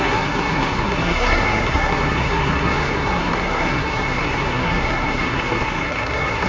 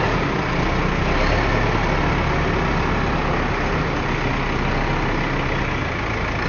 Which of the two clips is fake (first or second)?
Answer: first